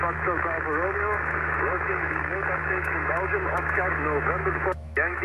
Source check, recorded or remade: remade